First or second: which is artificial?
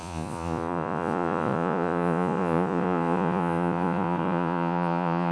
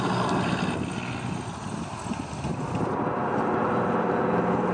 first